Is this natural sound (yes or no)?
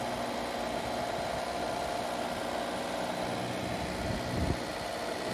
yes